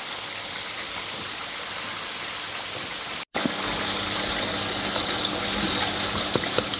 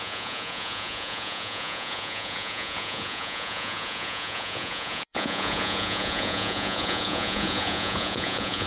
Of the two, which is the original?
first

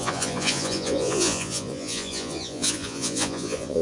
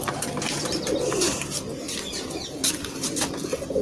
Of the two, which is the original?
second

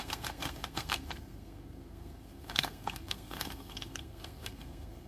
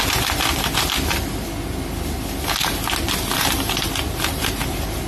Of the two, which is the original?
second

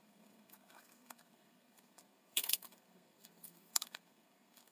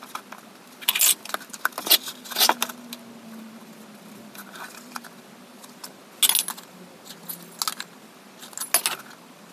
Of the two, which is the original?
second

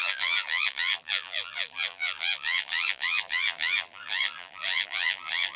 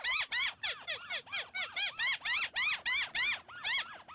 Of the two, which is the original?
second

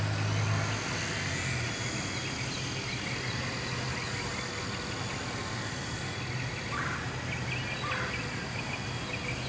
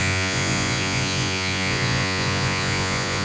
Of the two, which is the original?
first